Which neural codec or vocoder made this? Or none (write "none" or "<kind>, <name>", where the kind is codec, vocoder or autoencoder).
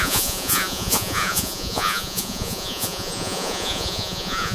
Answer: vocoder, Vocos